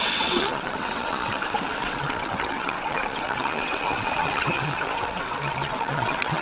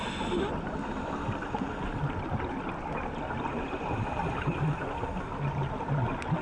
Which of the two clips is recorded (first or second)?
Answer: second